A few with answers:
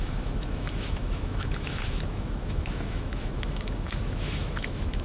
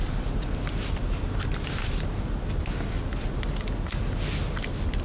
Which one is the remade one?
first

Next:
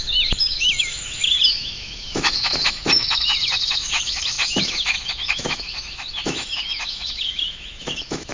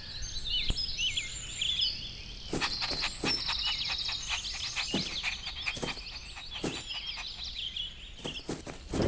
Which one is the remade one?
first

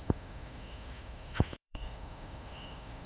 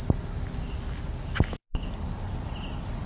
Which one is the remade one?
first